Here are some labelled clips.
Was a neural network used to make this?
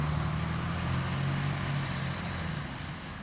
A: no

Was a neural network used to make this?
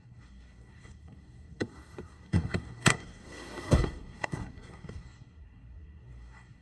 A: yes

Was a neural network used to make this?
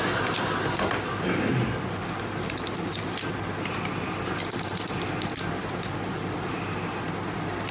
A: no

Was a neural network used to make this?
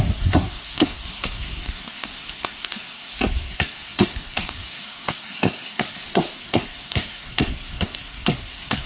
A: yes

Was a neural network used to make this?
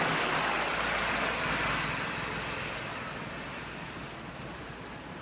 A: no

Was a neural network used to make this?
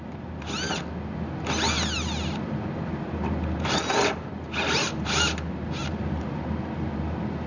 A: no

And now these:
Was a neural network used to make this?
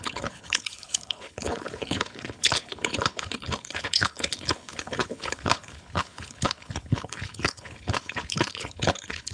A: yes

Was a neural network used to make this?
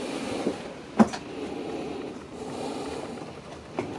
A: no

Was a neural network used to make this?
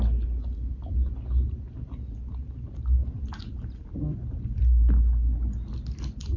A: no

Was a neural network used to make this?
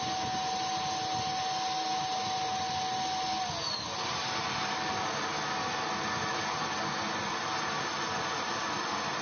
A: no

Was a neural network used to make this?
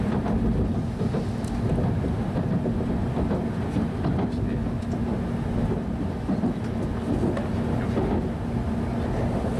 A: no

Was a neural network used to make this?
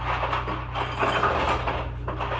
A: no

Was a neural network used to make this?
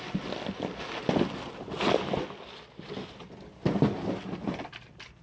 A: no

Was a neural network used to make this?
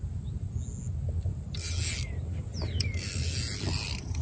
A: no